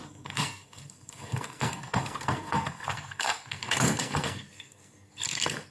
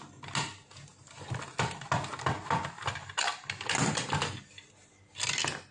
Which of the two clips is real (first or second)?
second